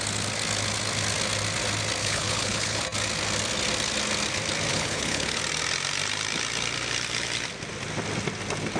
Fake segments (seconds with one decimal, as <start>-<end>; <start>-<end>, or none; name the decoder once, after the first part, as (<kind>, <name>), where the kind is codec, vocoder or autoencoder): 2.0-2.8 (codec, HILCodec); 4.7-5.4